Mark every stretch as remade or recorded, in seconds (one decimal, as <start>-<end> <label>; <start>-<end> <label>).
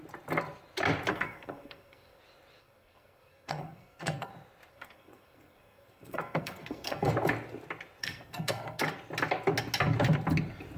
0.0-1.1 recorded; 1.1-2.2 remade; 2.2-2.6 recorded; 2.6-4.3 remade; 4.3-4.7 recorded; 4.7-7.1 remade; 7.1-8.0 recorded; 8.0-8.8 remade; 8.8-10.8 recorded